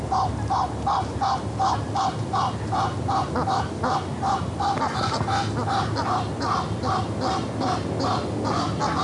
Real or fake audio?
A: real